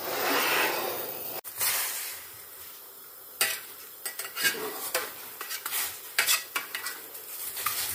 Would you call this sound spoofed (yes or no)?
yes